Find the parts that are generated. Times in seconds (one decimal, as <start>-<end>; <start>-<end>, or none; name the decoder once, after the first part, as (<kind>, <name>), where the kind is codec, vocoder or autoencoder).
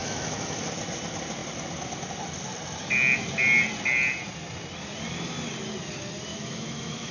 0.0-0.6 (autoencoder, DAC-VAE); 6.3-7.1